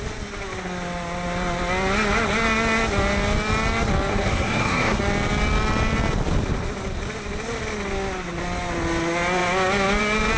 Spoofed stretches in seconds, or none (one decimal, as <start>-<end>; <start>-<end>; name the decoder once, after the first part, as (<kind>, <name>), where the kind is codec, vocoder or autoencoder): 4.1-5.0 (codec, SNAC)